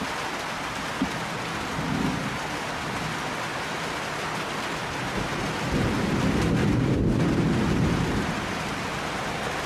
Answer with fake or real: real